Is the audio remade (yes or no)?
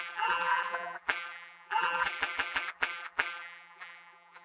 yes